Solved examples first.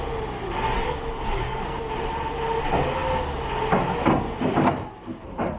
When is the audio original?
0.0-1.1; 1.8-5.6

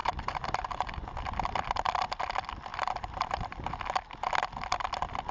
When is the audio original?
1.1-2.7; 3.8-5.3

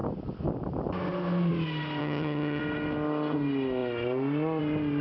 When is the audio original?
0.0-2.0; 2.6-5.0

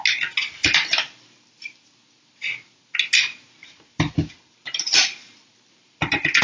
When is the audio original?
0.0-6.4

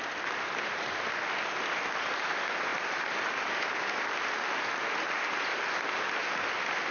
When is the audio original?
0.0-6.9

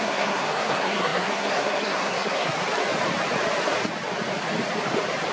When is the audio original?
2.6-5.3

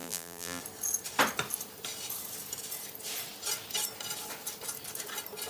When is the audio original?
0.6-5.5

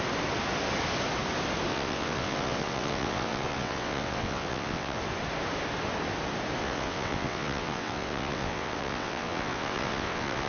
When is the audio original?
0.0-1.7; 5.0-6.6